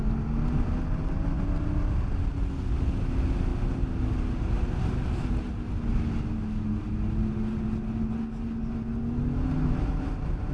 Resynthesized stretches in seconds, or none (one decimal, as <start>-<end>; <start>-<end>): none